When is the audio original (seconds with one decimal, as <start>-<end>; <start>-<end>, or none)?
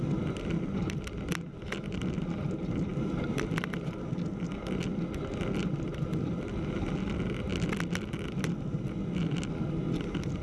0.0-10.4